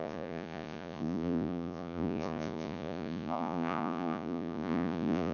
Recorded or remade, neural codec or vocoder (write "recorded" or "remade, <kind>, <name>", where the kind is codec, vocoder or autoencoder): remade, vocoder, Vocos